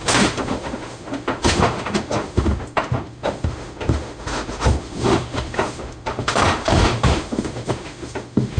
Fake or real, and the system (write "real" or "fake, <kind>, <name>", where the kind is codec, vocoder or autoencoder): fake, autoencoder, DAC-VAE